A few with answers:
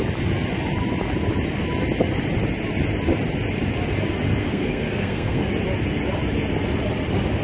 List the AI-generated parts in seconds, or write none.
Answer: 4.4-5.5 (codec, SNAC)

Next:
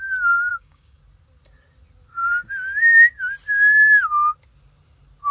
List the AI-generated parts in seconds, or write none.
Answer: 0.5-1.0 (codec, DAC)

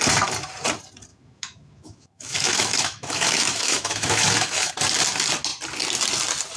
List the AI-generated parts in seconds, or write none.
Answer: 1.1-4.7 (autoencoder, DAC-VAE)

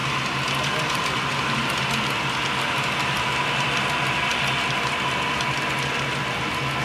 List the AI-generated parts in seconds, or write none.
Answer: none